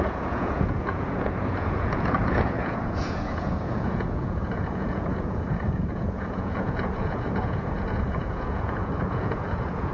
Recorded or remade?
remade